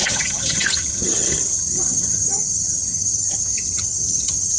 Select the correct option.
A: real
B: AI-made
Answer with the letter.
B